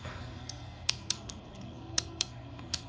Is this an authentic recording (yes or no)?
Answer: no